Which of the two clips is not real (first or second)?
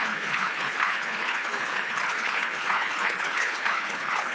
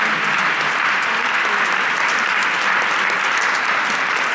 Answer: first